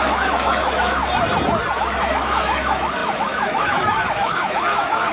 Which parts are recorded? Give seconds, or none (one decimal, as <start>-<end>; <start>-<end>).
1.0-1.8